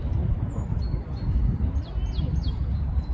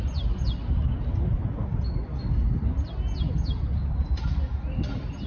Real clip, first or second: second